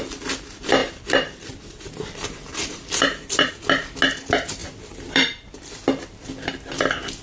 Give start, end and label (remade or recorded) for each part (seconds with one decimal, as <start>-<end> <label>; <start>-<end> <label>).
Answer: 0.0-0.8 recorded; 0.8-3.5 remade; 3.5-4.6 recorded; 4.6-5.6 remade; 5.6-7.2 recorded